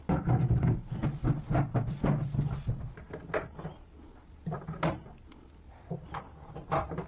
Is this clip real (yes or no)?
yes